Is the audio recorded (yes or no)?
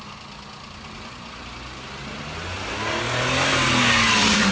yes